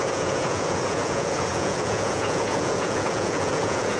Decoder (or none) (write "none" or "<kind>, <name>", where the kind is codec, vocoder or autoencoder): vocoder, Vocos